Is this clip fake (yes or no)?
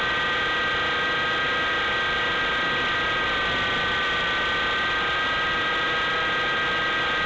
no